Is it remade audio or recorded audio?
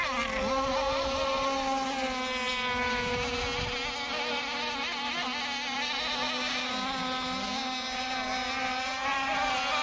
recorded